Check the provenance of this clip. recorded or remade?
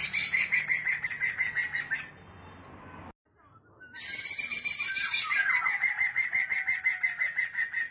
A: recorded